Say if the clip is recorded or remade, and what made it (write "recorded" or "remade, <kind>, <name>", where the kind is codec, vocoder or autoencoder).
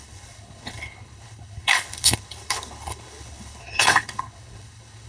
remade, codec, HILCodec